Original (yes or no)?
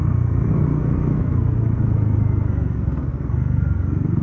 no